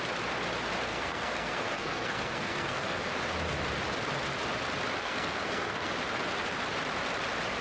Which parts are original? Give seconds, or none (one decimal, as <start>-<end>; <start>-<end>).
0.0-0.9; 3.1-5.0; 5.9-7.6